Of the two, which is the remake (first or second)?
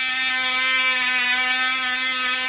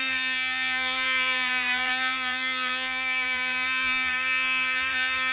second